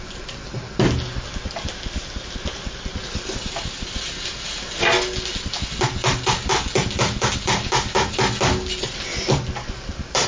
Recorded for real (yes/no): yes